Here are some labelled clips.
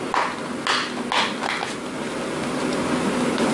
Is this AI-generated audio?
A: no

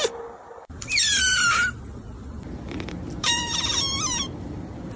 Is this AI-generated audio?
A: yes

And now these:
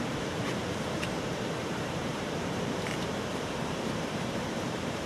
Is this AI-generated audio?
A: yes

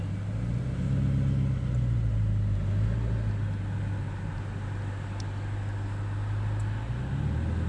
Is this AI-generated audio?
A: no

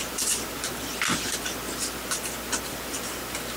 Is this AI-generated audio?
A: no